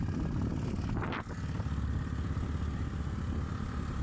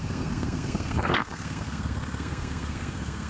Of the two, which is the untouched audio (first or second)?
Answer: first